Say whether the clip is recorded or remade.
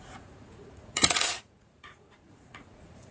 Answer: remade